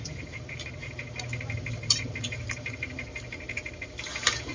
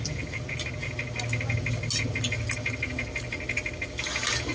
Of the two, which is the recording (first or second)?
second